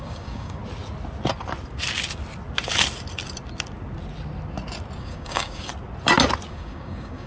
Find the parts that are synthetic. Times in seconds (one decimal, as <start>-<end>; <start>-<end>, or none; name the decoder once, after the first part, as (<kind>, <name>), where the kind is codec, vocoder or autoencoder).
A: 0.0-0.6 (codec, DAC); 5.0-5.7; 6.5-7.3